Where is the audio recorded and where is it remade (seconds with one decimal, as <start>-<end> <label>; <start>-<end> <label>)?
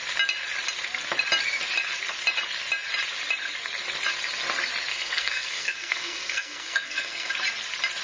0.0-4.9 recorded; 4.9-7.3 remade; 7.3-8.0 recorded